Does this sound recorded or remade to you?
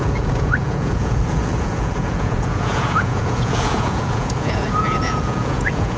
remade